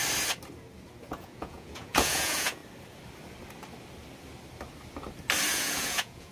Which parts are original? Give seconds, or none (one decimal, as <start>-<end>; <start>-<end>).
0.0-1.1; 2.6-5.5